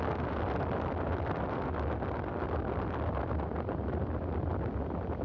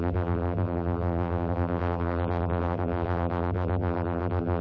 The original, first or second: first